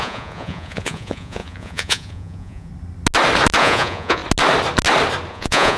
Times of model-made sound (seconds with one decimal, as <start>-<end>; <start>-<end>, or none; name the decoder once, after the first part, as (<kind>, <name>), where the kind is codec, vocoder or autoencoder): 0.0-2.7 (vocoder, Vocos); 3.6-4.2; 5.3-5.8